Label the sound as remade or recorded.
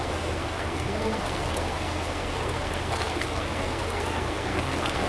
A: remade